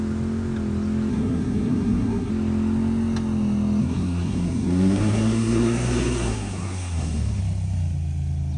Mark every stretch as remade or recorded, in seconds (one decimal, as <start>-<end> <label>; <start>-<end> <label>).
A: 0.0-1.1 recorded; 1.1-2.3 remade; 2.3-3.8 recorded; 3.8-7.4 remade; 7.4-8.6 recorded